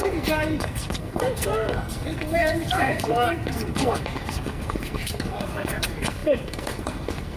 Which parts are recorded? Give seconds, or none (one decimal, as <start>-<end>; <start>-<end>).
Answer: none